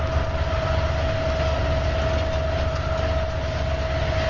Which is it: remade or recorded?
recorded